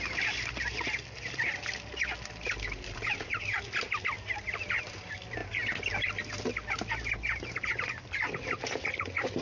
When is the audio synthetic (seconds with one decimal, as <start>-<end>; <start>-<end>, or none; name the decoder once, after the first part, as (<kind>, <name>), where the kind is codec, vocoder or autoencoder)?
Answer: 0.0-5.4 (vocoder, BigVGAN v2); 6.4-9.4